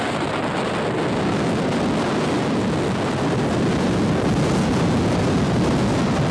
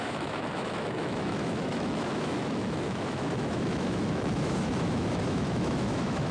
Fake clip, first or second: second